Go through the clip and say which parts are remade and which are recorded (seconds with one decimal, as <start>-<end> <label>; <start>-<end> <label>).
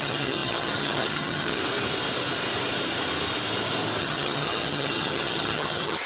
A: 0.0-1.6 remade; 1.6-4.0 recorded; 4.0-6.1 remade